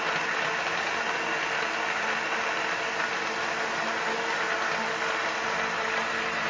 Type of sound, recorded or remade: recorded